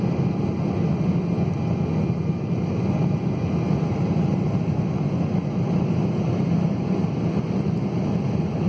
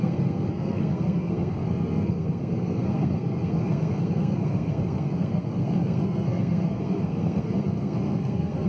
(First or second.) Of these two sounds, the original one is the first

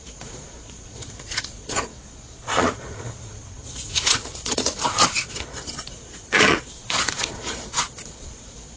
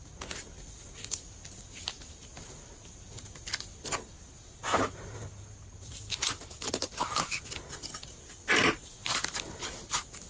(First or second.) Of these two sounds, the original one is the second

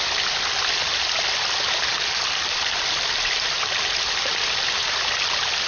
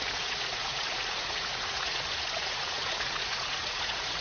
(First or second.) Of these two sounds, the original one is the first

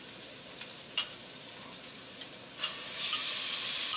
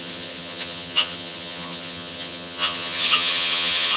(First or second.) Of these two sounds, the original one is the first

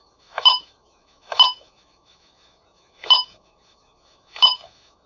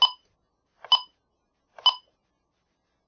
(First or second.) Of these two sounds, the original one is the second